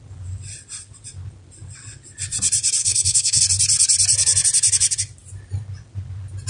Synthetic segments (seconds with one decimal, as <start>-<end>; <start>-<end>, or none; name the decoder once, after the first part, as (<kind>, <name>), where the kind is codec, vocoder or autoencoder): 2.8-3.4 (codec, SNAC)